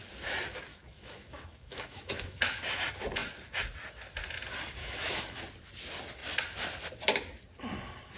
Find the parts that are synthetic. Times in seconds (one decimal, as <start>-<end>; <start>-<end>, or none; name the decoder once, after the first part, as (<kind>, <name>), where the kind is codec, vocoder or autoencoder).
0.7-2.6 (autoencoder, DAC-VAE); 4.8-5.4